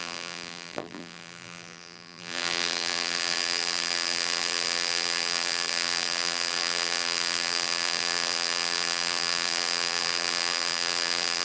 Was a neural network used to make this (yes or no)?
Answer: yes